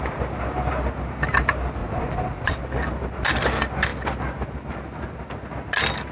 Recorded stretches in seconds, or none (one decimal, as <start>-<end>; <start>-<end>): 0.0-1.8; 2.6-6.1